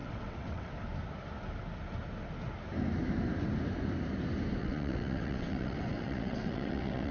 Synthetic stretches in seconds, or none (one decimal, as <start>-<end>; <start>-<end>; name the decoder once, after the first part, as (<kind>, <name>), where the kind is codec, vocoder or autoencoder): 0.0-0.7 (vocoder, WaveNeXt); 4.6-7.1